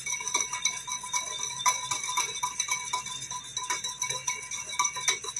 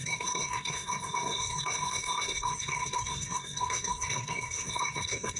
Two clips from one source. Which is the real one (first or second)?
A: first